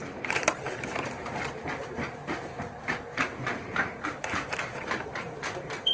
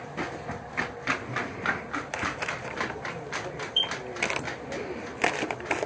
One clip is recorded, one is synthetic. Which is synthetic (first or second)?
first